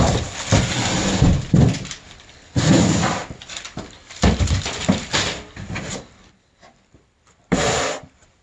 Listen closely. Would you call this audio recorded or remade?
remade